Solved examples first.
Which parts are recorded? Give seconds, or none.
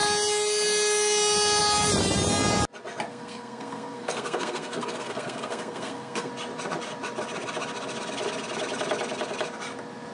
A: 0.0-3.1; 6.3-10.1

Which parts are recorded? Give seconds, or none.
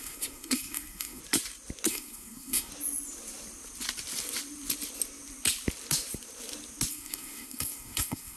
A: 1.2-1.9; 2.7-6.9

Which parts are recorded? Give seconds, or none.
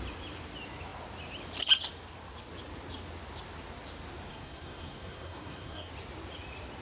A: 0.0-4.3; 5.9-6.8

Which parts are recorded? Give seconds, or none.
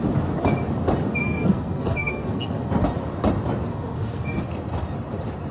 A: 0.0-1.2; 2.7-3.7; 4.4-5.5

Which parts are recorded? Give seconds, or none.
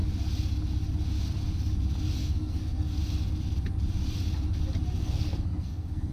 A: 0.0-2.2; 3.0-5.0